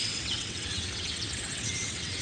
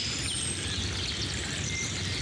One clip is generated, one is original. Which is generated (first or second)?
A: first